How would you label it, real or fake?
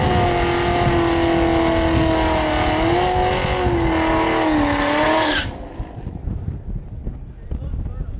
real